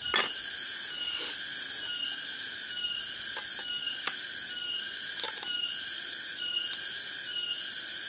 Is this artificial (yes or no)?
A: no